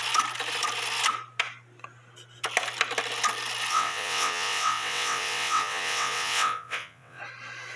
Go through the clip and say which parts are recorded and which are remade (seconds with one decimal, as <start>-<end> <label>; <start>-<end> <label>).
0.0-3.7 recorded; 3.7-7.2 remade; 7.2-7.8 recorded